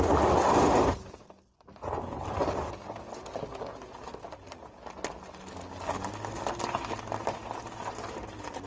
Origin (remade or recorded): recorded